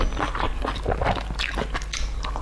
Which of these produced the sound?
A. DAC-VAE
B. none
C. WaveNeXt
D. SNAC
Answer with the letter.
B